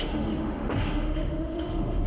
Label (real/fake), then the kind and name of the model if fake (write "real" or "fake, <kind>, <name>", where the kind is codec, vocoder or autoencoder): fake, autoencoder, DAC-VAE